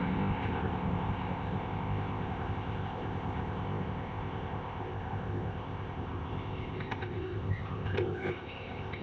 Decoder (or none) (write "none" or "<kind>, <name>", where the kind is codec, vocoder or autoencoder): codec, ZipCodec